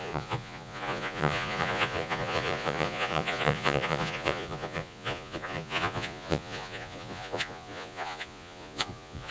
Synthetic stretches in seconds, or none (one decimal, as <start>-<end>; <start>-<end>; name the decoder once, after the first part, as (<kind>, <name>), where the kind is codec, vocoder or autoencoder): 0.0-9.3 (vocoder, Vocos)